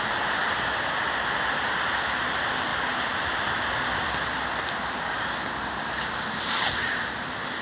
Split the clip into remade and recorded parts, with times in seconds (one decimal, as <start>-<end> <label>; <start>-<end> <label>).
0.0-7.6 recorded